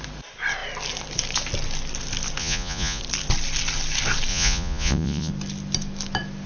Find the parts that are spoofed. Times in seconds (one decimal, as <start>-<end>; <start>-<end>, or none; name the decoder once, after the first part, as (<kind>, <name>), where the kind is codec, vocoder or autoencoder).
2.4-3.0 (vocoder, Vocos); 4.3-5.3